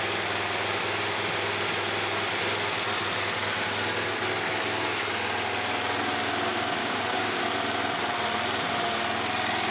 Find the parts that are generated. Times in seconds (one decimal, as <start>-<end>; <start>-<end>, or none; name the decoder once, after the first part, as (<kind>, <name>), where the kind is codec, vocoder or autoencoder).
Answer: 6.8-7.4 (codec, DAC)